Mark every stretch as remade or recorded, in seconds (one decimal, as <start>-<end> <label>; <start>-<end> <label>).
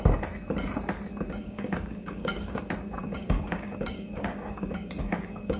0.0-1.4 recorded; 1.4-2.6 remade; 2.6-3.0 recorded; 3.0-5.6 remade